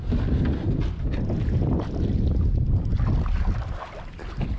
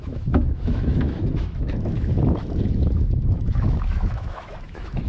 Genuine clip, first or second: first